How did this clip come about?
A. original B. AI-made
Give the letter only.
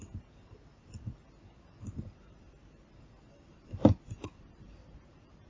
A